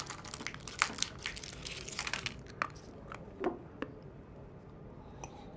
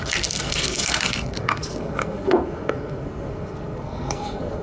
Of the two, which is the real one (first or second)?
first